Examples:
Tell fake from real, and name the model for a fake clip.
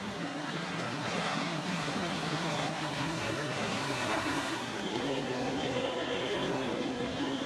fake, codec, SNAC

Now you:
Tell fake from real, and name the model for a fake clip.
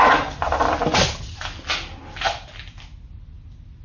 real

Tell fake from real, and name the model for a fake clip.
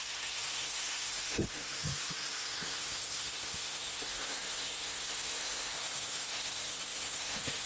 fake, codec, SNAC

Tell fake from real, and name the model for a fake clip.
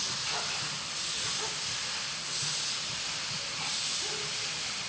real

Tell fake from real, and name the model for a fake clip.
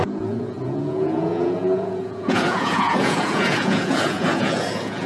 fake, vocoder, Vocos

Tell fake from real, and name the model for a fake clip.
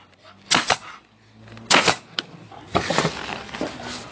real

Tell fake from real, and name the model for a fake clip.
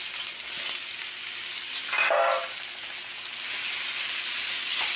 real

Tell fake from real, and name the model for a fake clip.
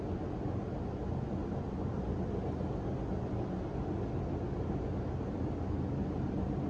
real